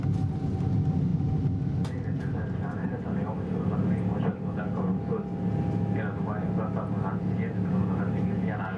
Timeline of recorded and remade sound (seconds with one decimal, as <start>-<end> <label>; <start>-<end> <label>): 0.0-8.8 recorded

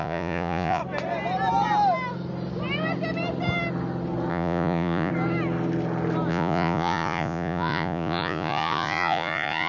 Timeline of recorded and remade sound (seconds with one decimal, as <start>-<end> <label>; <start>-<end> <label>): 0.0-0.8 remade; 0.8-4.3 recorded; 4.3-5.1 remade; 5.1-6.3 recorded; 6.3-9.7 remade

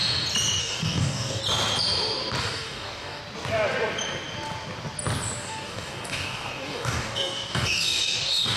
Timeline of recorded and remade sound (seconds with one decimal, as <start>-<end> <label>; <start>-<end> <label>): 0.0-0.6 recorded; 0.6-1.4 remade; 1.4-2.4 recorded; 2.4-3.2 remade; 3.2-5.4 recorded; 5.4-8.6 remade

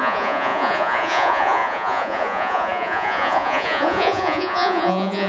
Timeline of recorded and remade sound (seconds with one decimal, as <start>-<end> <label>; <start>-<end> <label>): 0.0-5.3 remade